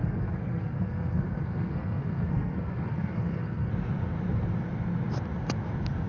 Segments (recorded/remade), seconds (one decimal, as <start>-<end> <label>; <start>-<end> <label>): 0.0-3.7 remade; 3.7-6.1 recorded